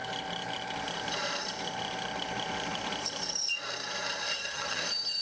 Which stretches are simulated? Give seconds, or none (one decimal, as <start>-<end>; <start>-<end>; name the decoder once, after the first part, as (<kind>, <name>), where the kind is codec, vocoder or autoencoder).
4.3-4.8 (vocoder, HiFi-GAN)